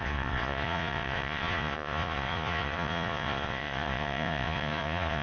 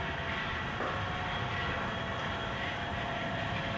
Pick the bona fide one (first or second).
second